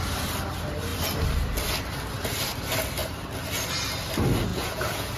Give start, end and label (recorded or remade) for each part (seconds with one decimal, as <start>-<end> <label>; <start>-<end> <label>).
0.0-4.5 recorded; 4.5-5.2 remade